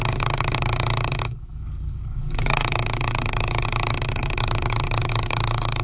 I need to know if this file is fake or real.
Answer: fake